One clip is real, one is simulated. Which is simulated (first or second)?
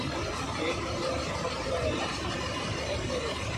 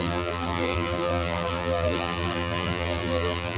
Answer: second